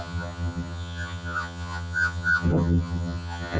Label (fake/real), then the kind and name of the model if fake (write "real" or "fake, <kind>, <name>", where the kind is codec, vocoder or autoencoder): fake, vocoder, HiFi-GAN